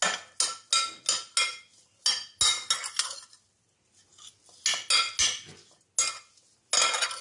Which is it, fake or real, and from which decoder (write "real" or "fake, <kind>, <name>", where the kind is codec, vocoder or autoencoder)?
real